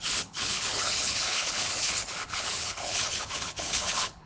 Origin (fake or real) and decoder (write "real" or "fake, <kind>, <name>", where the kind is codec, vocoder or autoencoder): fake, codec, HILCodec